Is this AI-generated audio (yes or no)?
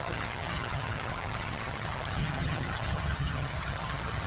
yes